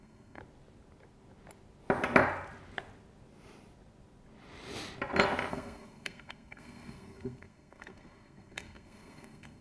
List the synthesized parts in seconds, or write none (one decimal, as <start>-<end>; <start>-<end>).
0.0-0.4; 5.5-9.6